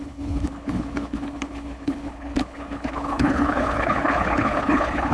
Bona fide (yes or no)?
no